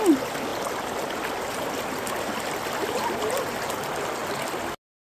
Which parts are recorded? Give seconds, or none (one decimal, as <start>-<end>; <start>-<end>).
0.0-5.1